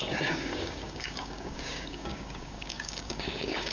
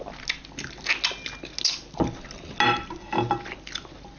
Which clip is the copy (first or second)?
first